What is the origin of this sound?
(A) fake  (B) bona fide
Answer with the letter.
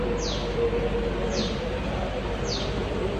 B